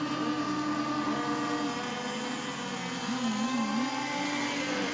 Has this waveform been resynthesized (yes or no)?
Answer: no